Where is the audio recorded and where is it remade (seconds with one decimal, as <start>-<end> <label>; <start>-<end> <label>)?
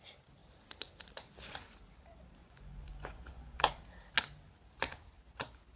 0.0-2.4 recorded; 2.4-3.8 remade; 3.8-5.8 recorded